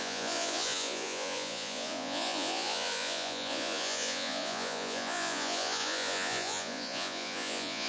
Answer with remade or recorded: remade